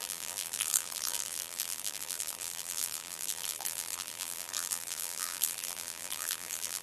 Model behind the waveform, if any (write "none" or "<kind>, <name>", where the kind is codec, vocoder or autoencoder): vocoder, BigVGAN v2